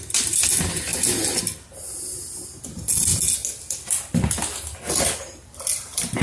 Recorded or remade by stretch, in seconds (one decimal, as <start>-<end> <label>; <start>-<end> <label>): 0.0-6.2 recorded